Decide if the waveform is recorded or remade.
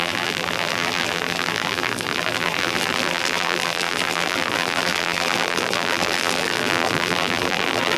remade